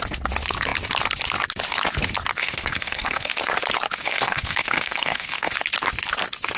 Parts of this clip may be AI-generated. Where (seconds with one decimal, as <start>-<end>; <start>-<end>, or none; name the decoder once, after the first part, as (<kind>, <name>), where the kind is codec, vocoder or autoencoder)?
2.4-3.3 (codec, SNAC); 4.0-5.5